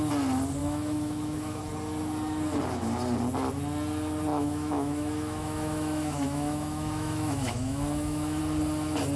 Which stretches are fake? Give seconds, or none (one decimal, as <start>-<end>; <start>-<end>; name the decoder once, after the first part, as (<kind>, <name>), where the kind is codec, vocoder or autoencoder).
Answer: 0.6-1.6 (autoencoder, DAC-VAE); 4.3-8.4